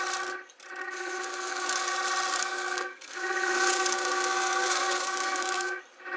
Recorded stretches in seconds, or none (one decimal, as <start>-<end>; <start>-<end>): 0.0-0.8; 1.9-2.3; 5.8-6.2